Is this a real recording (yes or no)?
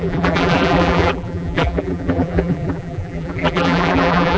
no